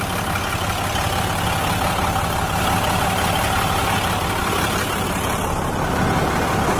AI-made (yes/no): no